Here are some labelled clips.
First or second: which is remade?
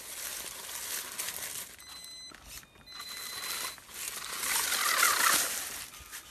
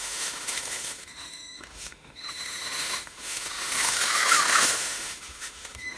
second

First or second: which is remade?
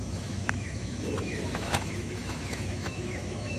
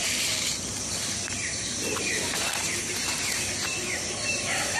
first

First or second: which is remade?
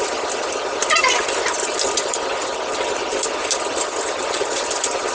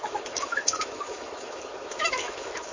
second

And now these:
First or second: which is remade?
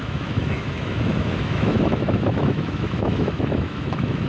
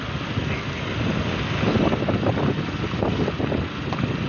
first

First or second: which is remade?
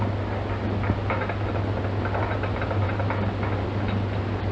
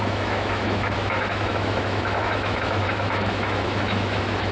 second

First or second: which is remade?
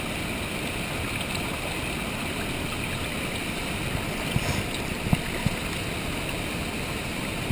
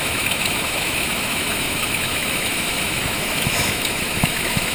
second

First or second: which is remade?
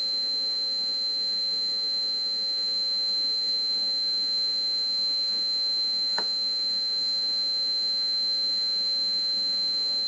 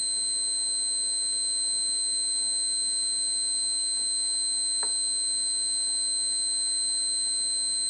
first